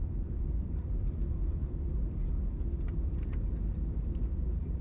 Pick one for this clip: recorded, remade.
remade